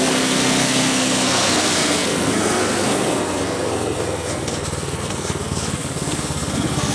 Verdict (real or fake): fake